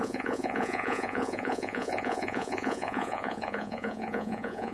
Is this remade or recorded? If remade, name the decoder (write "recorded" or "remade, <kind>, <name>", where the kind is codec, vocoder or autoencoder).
remade, vocoder, Vocos